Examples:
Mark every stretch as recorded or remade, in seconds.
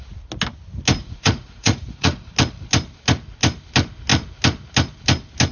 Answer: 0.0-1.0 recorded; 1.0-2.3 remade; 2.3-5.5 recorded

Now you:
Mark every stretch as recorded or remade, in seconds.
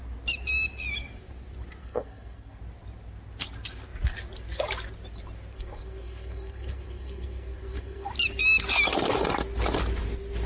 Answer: 0.0-1.8 recorded; 1.8-2.6 remade; 2.6-5.5 recorded; 5.5-8.1 remade; 8.1-10.5 recorded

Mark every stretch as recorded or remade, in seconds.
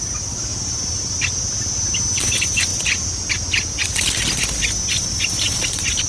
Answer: 0.0-6.1 recorded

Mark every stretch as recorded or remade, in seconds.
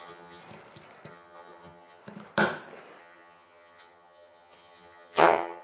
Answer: 0.0-0.4 remade; 0.4-1.1 recorded; 1.1-2.0 remade; 2.0-3.0 recorded; 3.0-5.6 remade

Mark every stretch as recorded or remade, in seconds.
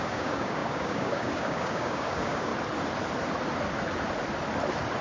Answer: 0.0-2.5 remade; 2.5-5.0 recorded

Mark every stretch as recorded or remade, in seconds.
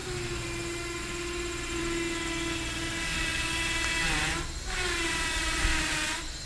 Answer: 0.0-6.5 recorded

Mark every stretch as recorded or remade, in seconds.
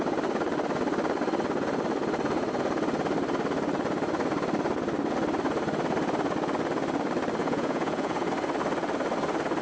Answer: 0.0-7.4 recorded; 7.4-8.3 remade; 8.3-9.6 recorded